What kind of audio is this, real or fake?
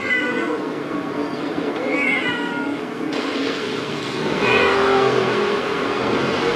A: fake